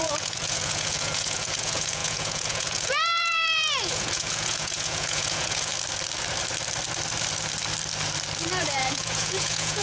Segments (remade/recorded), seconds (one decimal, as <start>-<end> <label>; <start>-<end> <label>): 0.0-5.7 remade; 5.7-8.6 recorded; 8.6-9.8 remade